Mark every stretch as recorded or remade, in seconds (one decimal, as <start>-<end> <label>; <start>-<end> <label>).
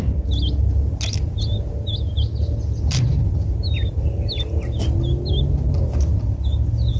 0.0-7.0 recorded